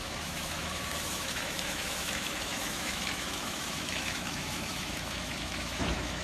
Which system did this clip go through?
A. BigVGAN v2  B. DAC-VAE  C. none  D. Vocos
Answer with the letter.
B